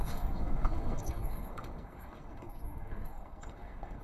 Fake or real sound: fake